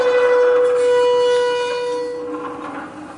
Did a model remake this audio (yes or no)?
no